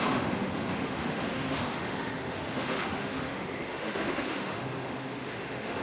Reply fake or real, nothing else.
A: fake